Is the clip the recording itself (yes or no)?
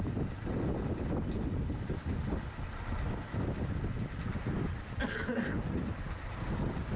yes